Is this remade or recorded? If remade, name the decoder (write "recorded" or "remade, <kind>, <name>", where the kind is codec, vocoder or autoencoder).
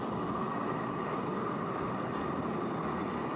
recorded